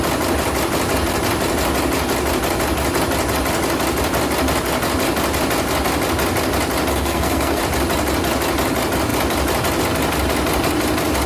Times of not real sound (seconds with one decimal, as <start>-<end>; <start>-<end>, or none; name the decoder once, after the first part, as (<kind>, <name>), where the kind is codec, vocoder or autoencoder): 6.9-7.6 (codec, SNAC)